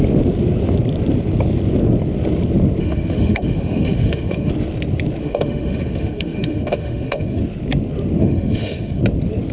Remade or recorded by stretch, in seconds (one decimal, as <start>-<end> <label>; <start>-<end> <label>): 0.0-2.8 recorded; 2.8-4.5 remade; 4.5-5.2 recorded; 5.2-7.4 remade; 7.4-8.2 recorded; 8.2-9.0 remade; 9.0-9.5 recorded